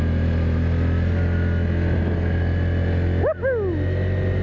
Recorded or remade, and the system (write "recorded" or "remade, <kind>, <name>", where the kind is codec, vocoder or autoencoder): recorded